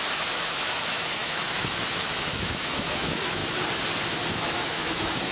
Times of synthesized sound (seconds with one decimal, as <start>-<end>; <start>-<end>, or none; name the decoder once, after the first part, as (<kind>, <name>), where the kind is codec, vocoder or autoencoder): 0.0-3.4 (autoencoder, DAC-VAE); 4.3-5.3